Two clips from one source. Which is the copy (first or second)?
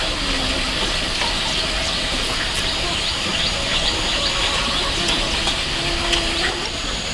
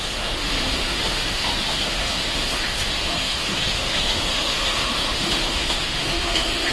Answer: second